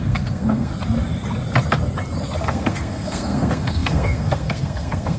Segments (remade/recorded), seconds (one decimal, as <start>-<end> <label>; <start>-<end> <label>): 0.0-0.7 remade; 0.7-2.4 recorded; 2.4-5.2 remade